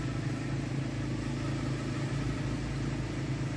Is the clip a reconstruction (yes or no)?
no